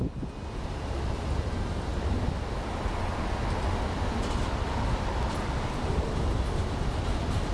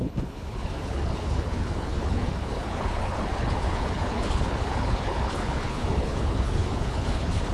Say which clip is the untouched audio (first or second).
first